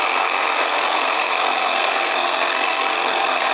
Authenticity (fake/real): fake